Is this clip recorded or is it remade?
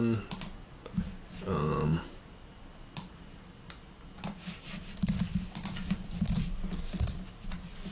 recorded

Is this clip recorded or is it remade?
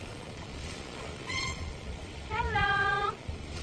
remade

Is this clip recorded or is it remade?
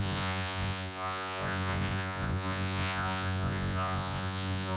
remade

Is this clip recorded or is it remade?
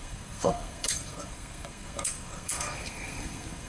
remade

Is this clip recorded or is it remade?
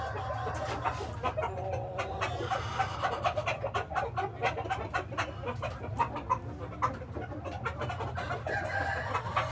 recorded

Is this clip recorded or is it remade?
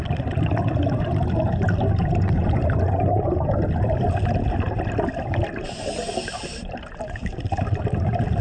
recorded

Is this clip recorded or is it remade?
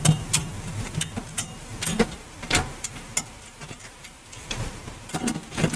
recorded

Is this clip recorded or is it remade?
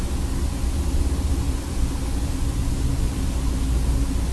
recorded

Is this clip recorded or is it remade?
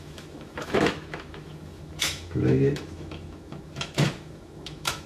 remade